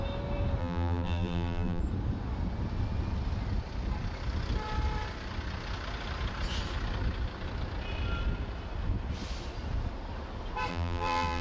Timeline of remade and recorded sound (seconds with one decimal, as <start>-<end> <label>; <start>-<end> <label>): 0.0-0.6 recorded; 0.6-1.8 remade; 1.8-10.7 recorded; 10.7-11.4 remade